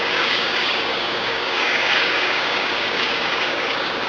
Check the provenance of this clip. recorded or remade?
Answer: remade